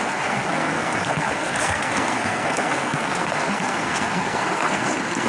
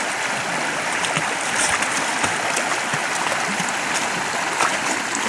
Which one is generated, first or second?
first